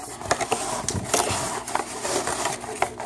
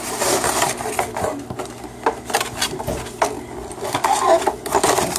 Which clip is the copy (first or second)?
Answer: first